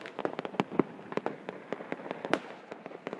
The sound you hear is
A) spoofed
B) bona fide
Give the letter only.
B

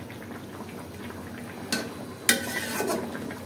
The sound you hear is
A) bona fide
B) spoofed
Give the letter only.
A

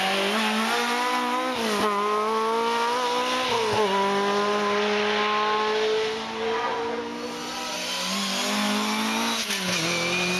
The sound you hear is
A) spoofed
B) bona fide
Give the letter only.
B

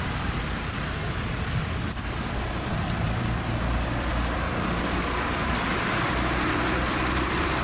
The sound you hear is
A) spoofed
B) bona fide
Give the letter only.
A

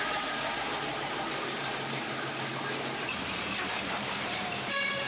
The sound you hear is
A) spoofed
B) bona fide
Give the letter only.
A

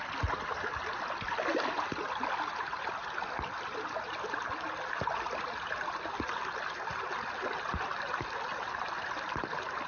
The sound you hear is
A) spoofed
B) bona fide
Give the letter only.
B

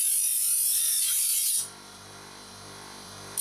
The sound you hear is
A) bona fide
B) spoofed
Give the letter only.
B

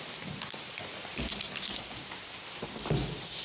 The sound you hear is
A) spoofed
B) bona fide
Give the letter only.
A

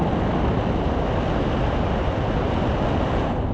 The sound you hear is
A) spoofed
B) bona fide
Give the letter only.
B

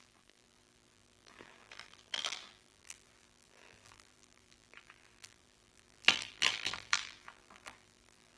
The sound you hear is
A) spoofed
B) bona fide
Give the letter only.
A